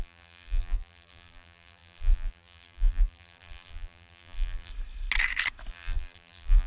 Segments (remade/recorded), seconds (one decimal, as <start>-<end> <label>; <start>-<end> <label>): 0.0-4.7 remade; 4.7-5.7 recorded; 5.7-6.7 remade